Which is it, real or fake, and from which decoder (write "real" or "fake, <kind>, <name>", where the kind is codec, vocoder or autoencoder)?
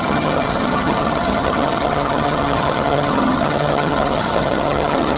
fake, vocoder, HiFi-GAN